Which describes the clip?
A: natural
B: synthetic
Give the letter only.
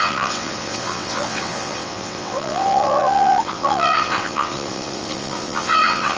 B